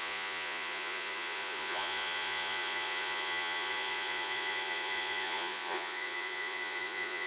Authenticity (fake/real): fake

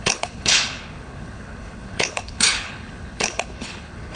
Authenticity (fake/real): fake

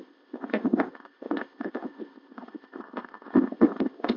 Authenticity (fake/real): fake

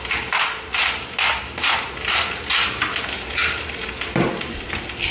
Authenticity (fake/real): real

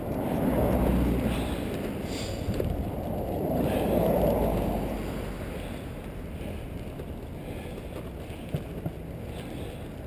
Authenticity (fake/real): real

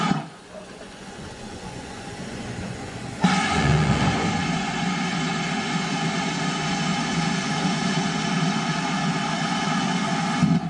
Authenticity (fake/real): fake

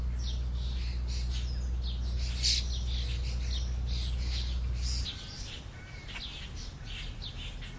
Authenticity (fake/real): real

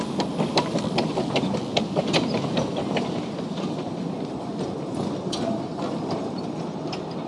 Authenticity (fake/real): real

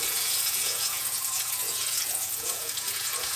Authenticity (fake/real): fake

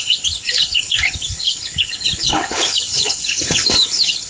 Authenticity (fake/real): fake